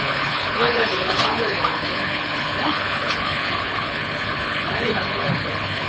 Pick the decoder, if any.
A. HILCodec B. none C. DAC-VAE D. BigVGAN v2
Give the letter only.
A